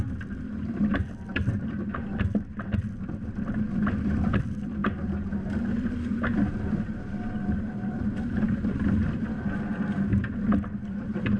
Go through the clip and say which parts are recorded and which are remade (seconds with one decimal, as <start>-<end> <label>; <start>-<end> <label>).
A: 0.0-10.1 remade; 10.1-10.7 recorded; 10.7-11.4 remade